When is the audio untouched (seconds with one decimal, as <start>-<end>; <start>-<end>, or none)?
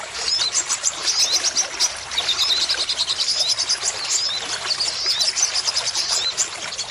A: 1.0-5.1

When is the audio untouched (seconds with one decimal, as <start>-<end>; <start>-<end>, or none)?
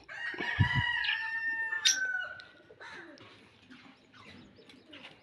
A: 0.0-1.0; 2.0-5.2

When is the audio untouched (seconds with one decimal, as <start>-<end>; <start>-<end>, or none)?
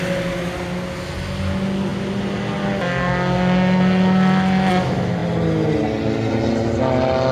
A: 0.0-7.3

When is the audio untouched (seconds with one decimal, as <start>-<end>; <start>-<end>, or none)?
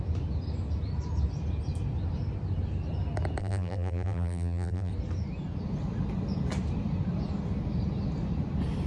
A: 0.0-3.4; 4.9-8.9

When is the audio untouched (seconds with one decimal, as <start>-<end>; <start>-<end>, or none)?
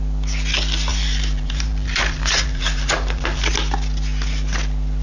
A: 0.0-0.9; 3.5-5.0